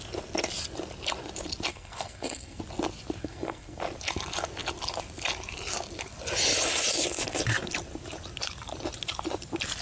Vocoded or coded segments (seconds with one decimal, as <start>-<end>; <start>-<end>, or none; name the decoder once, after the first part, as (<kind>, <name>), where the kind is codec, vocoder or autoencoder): 1.7-2.6 (codec, SNAC); 3.2-3.8